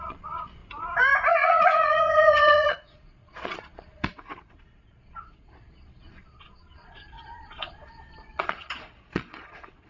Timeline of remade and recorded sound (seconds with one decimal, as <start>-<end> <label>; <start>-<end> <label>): 0.0-0.6 remade; 0.6-1.3 recorded; 1.3-9.9 remade